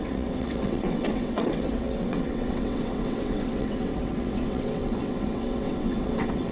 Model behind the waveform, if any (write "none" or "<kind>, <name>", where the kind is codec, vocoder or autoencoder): vocoder, WaveNeXt